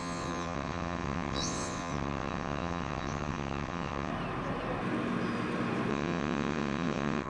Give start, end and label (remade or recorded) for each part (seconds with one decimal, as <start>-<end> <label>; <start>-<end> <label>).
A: 0.0-4.1 remade; 4.1-5.9 recorded; 5.9-7.3 remade